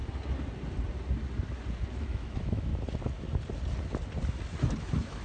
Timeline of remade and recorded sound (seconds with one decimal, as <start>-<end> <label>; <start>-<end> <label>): 0.0-2.0 recorded; 2.0-2.7 remade; 2.7-4.8 recorded; 4.8-5.2 remade